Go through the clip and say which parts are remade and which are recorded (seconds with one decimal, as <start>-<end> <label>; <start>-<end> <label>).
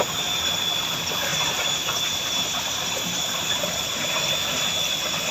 0.0-1.3 recorded; 1.3-3.5 remade; 3.5-5.3 recorded